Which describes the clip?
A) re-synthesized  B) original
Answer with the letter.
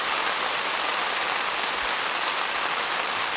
B